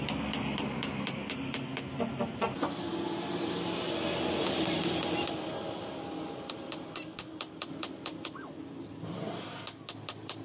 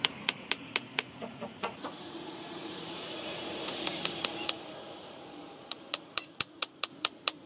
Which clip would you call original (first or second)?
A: first